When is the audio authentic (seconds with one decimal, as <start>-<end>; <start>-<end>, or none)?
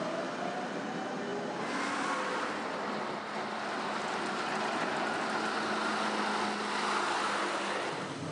0.0-8.3